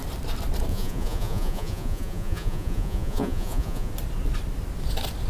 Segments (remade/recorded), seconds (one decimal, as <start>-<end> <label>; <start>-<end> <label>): 0.0-0.7 recorded; 0.7-3.9 remade; 3.9-5.3 recorded